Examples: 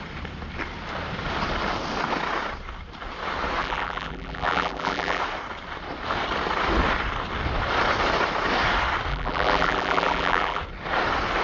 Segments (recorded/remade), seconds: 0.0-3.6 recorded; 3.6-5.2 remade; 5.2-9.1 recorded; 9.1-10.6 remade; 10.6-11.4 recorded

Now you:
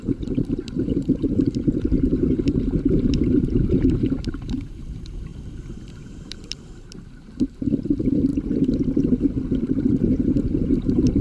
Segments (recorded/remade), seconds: 0.0-8.3 remade; 8.3-9.8 recorded; 9.8-11.2 remade

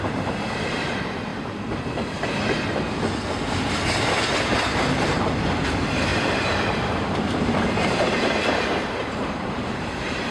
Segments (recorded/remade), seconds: 0.0-1.3 remade; 1.3-3.5 recorded; 3.5-10.3 remade

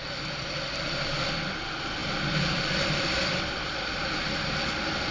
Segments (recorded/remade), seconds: 0.0-5.1 recorded

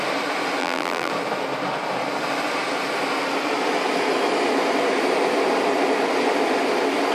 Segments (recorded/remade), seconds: 0.0-0.6 recorded; 0.6-1.1 remade; 1.1-7.1 recorded

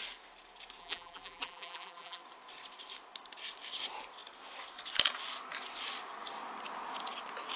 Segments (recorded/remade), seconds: 0.0-0.8 recorded; 0.8-2.2 remade; 2.2-7.6 recorded